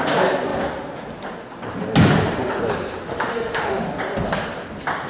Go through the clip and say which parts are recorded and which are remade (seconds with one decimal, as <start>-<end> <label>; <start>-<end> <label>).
0.0-3.1 recorded; 3.1-3.8 remade; 3.8-5.1 recorded